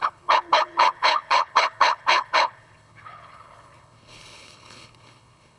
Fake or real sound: fake